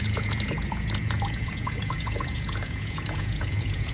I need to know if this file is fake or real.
fake